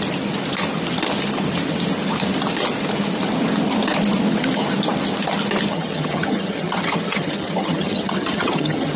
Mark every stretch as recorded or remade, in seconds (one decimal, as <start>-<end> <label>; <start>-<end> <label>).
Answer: 0.0-5.7 recorded; 5.7-9.0 remade